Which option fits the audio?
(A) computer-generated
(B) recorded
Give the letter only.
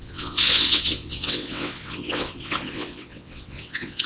A